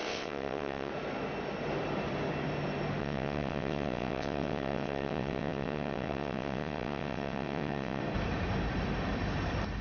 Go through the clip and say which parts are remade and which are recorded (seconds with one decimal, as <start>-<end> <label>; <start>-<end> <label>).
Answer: 0.0-0.9 remade; 0.9-3.0 recorded; 3.0-8.0 remade; 8.0-9.8 recorded